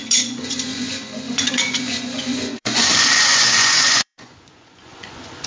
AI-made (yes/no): yes